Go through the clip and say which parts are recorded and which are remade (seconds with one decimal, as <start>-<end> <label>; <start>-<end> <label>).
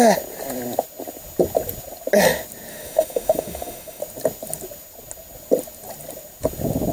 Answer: 0.0-2.7 recorded; 2.7-4.0 remade; 4.0-6.9 recorded